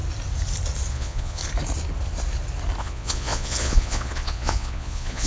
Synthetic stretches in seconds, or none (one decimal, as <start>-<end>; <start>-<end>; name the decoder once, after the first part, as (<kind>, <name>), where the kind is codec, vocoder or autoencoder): 0.9-1.4 (vocoder, Vocos); 2.8-5.3